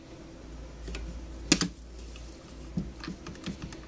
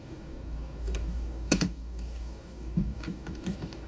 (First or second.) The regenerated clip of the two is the second